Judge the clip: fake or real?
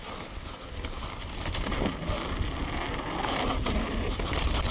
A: real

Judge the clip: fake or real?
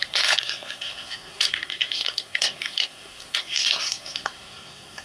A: fake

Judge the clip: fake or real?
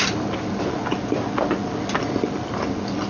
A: real